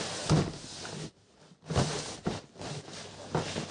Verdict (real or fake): real